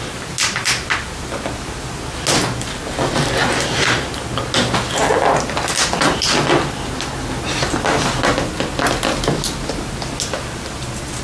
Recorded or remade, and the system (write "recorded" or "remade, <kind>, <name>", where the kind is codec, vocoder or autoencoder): recorded